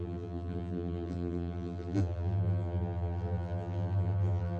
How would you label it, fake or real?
fake